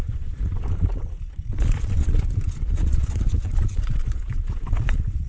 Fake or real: fake